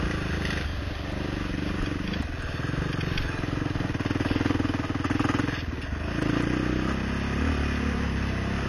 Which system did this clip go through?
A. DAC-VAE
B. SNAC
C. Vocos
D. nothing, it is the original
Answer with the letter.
D